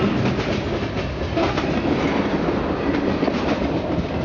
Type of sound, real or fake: real